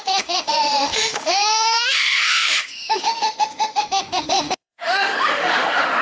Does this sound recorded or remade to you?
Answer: remade